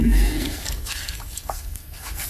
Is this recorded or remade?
remade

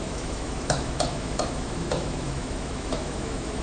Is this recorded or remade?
remade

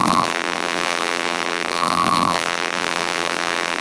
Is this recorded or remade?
remade